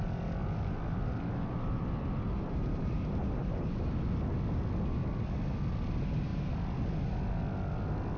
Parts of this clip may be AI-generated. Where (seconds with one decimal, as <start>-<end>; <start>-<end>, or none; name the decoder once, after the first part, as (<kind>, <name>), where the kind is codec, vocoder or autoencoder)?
0.4-4.0 (vocoder, BigVGAN v2)